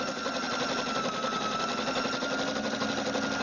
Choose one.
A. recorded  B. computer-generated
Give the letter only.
A